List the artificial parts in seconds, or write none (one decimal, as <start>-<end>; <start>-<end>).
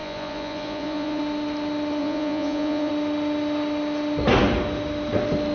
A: 0.0-1.2; 2.0-2.9